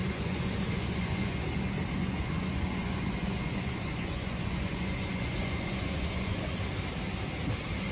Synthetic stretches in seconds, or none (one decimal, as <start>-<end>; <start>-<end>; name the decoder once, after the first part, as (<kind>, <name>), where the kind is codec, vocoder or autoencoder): 0.0-1.4 (vocoder, Vocos); 2.0-6.5